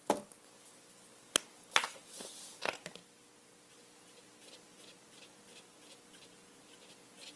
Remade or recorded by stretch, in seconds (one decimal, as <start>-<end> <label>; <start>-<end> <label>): 0.0-7.4 recorded